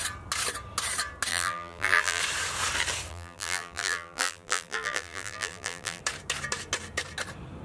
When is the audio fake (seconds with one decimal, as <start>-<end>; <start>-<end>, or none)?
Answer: 1.3-2.2; 3.1-6.0